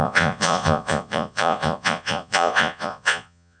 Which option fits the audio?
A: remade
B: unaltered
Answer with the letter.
A